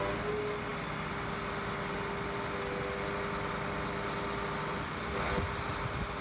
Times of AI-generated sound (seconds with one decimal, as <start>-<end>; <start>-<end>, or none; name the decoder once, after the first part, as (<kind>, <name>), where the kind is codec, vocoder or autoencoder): none